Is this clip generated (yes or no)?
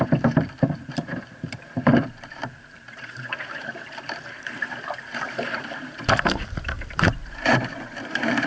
yes